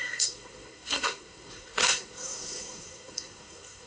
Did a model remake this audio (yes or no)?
yes